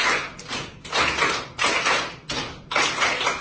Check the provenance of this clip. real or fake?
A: real